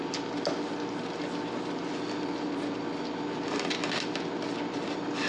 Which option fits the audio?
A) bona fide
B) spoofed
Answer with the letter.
A